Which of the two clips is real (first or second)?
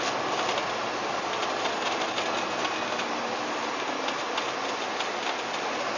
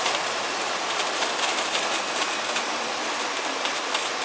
first